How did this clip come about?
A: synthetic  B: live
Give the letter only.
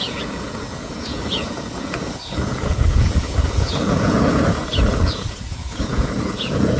A